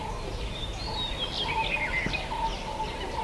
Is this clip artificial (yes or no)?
no